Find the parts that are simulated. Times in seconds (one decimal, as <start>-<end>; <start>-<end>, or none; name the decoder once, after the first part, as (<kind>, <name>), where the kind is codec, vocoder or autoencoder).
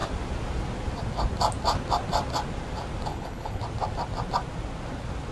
3.1-3.6 (codec, HILCodec)